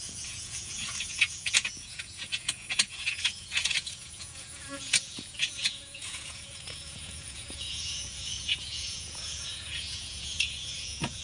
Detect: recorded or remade remade